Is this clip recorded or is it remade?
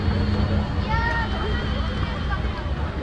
recorded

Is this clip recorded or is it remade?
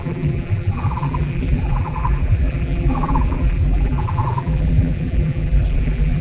remade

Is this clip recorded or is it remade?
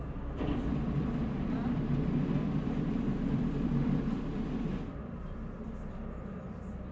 remade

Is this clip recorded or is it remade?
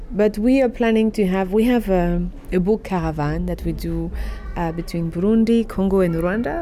recorded